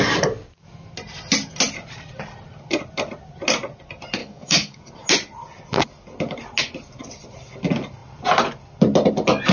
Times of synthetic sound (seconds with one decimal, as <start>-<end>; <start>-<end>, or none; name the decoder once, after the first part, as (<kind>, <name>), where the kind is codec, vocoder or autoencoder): 4.2-4.8 (codec, DAC)